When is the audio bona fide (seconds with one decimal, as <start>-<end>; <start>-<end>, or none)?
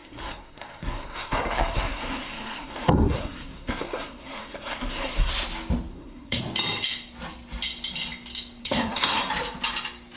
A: 5.3-5.9; 6.4-8.6; 9.2-10.2